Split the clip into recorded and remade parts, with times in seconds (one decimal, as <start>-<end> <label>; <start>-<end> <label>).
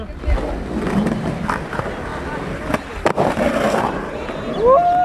0.0-5.0 recorded